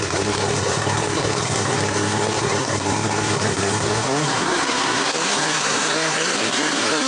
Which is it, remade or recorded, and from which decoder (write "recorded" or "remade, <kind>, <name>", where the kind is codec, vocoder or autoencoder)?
remade, codec, SNAC